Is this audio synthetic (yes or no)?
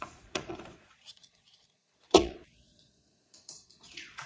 yes